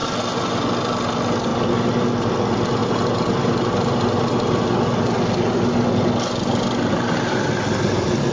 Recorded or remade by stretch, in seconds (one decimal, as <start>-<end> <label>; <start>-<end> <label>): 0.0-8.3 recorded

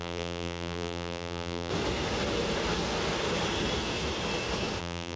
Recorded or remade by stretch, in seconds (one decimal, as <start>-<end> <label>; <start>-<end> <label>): 0.0-1.7 remade; 1.7-4.8 recorded; 4.8-5.2 remade

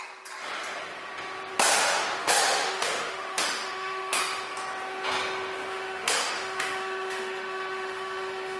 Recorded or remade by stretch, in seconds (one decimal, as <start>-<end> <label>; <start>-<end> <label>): 0.0-1.7 recorded; 1.7-4.2 remade; 4.2-5.7 recorded; 5.7-8.6 remade

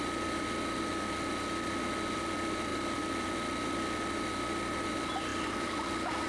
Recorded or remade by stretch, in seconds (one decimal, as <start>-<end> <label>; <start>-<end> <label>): 0.0-6.3 recorded

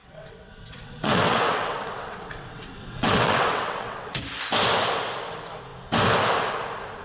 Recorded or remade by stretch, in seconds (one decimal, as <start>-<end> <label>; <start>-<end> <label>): 0.0-4.2 remade; 4.2-7.0 recorded

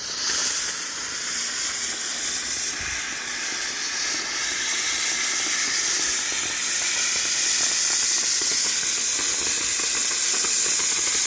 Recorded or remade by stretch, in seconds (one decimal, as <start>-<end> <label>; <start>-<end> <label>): 0.0-0.4 recorded; 0.4-4.7 remade; 4.7-11.3 recorded

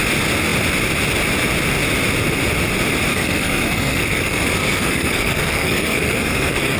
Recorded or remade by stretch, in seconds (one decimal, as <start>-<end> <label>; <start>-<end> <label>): 0.0-3.1 recorded; 3.1-6.8 remade

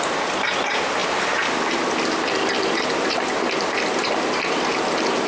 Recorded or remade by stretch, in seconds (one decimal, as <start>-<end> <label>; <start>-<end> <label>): 0.0-5.3 recorded